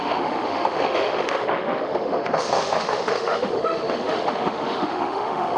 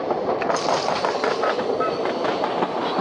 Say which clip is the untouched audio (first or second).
second